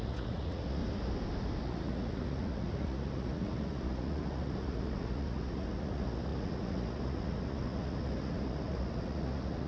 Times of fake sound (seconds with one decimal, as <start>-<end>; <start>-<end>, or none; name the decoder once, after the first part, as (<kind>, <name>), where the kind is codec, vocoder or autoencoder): 0.0-0.8 (vocoder, Vocos); 1.6-9.7